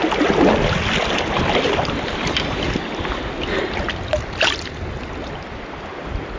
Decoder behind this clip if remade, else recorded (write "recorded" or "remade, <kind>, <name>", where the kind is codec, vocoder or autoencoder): recorded